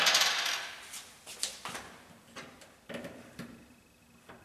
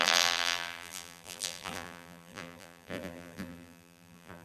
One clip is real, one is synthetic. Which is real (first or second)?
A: first